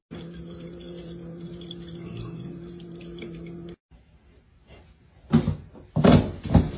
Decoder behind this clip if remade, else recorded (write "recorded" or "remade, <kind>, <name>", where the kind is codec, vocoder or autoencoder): recorded